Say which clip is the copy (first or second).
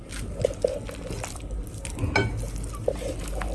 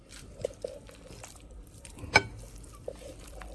second